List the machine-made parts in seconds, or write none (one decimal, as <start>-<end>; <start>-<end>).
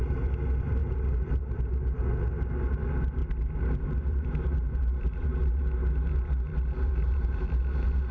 0.8-1.6; 3.2-5.6; 6.5-7.6